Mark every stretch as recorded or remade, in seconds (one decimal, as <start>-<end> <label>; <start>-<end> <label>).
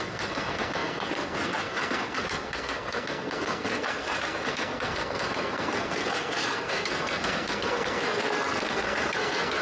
0.0-9.6 remade